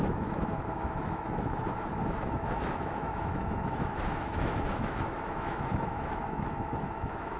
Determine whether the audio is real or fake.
fake